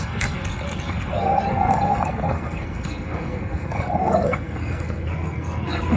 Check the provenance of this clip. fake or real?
fake